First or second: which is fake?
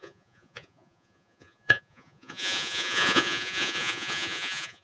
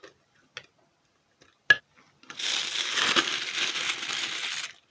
first